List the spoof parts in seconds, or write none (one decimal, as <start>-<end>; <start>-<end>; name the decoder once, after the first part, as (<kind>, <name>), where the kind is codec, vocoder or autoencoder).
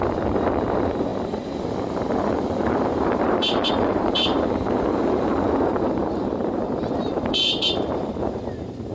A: 0.0-8.9 (vocoder, BigVGAN v2)